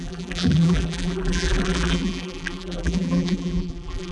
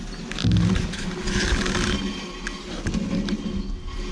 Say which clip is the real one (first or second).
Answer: second